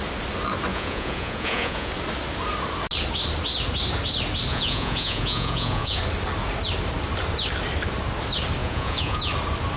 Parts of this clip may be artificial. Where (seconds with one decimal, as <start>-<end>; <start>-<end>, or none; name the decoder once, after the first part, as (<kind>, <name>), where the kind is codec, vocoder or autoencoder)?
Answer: 0.7-1.9 (vocoder, Vocos); 4.5-6.0; 8.6-9.3